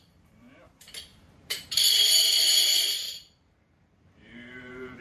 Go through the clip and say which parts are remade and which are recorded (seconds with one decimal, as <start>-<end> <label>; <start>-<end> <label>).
0.0-5.0 remade